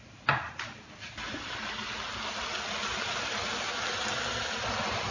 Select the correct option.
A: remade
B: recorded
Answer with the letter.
B